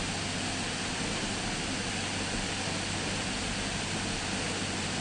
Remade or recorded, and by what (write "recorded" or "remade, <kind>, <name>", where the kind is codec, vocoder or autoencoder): recorded